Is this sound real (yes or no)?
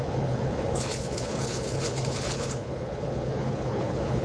no